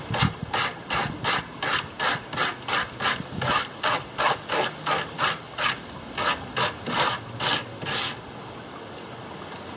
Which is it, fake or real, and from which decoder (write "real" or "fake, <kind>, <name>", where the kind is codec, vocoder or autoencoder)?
real